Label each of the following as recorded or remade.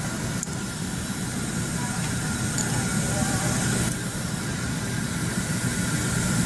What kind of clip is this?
recorded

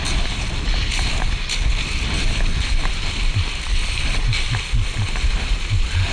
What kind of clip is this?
recorded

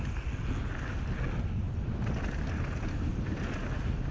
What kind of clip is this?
recorded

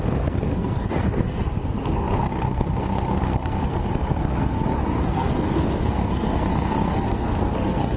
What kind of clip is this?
remade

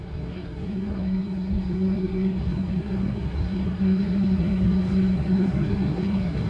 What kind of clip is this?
remade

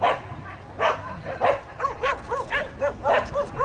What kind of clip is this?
recorded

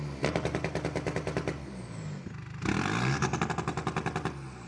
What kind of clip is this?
recorded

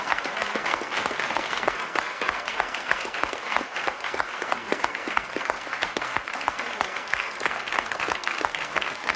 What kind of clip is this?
remade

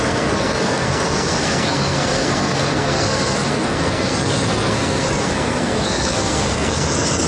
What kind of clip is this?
remade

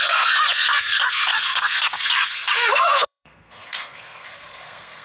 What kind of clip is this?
remade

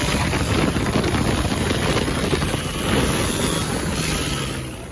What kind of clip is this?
recorded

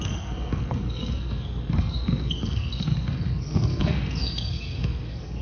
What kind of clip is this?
remade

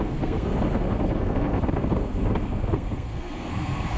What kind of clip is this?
remade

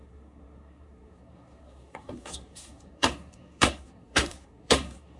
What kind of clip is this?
remade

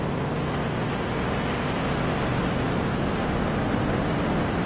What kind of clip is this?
recorded